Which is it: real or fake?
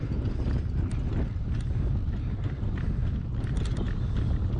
real